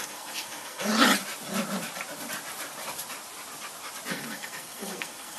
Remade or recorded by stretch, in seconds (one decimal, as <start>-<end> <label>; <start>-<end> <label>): 0.0-0.9 remade; 0.9-4.1 recorded; 4.1-5.4 remade